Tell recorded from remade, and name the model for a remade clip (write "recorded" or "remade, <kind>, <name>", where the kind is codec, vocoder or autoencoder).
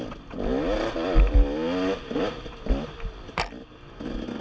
recorded